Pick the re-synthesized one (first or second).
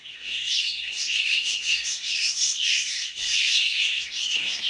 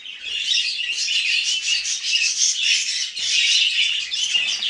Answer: first